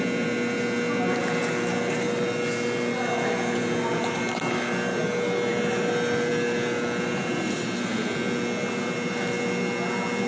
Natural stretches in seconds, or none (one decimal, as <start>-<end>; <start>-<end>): 0.0-10.3